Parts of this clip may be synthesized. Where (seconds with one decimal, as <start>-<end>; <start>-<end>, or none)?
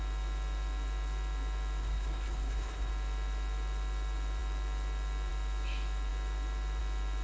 1.8-2.9